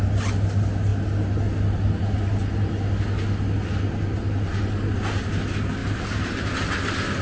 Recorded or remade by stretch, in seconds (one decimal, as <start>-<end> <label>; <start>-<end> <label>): 0.0-5.8 recorded; 5.8-6.7 remade; 6.7-7.2 recorded